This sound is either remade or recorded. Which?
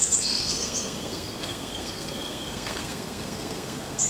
remade